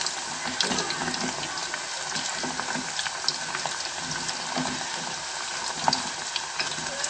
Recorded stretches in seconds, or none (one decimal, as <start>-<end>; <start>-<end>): 0.0-7.1